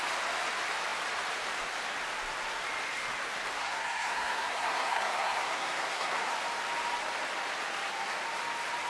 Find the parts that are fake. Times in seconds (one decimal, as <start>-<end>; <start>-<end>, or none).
3.6-6.3